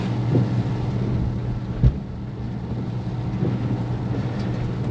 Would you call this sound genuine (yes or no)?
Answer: yes